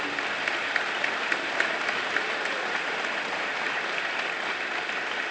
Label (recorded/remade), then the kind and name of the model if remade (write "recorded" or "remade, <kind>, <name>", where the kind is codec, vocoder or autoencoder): recorded